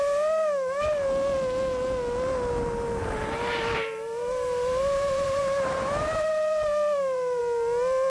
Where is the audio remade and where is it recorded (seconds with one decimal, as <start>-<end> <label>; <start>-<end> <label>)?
0.0-3.0 recorded; 3.0-7.4 remade; 7.4-8.1 recorded